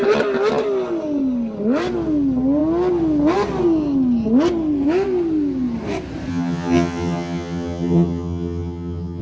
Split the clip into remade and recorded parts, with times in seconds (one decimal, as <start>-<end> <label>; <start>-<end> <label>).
0.0-6.3 recorded; 6.3-9.2 remade

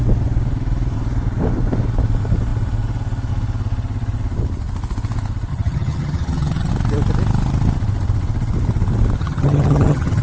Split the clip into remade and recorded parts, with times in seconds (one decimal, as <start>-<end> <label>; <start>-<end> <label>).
0.0-5.5 recorded; 5.5-6.7 remade; 6.7-9.2 recorded; 9.2-10.2 remade